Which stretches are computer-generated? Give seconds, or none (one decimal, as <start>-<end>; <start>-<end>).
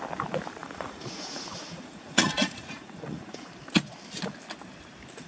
0.6-3.5